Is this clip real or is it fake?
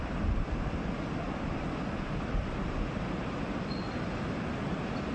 real